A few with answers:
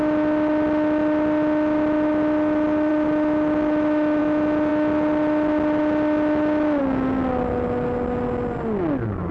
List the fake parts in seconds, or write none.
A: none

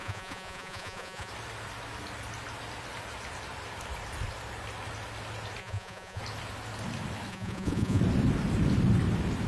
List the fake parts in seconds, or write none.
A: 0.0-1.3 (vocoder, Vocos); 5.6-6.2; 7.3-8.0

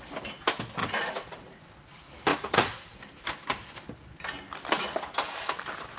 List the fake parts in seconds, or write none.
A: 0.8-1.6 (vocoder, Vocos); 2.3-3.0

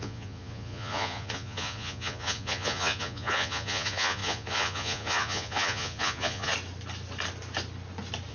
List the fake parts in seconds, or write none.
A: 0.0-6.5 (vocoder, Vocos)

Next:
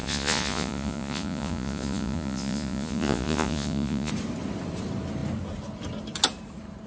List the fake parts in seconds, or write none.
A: 0.0-4.1 (vocoder, Vocos)

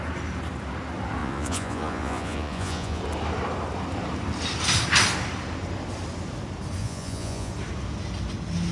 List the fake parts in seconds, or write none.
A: 1.2-3.0 (vocoder, Vocos); 6.8-7.5